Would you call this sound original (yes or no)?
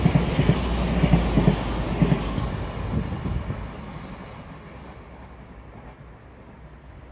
yes